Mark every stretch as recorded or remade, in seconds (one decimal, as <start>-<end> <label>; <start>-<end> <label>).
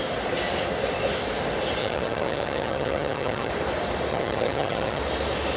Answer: 0.0-1.8 recorded; 1.8-3.5 remade; 3.5-4.1 recorded; 4.1-5.0 remade; 5.0-5.6 recorded